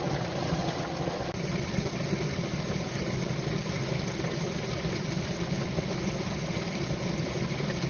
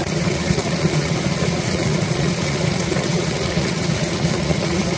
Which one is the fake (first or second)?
second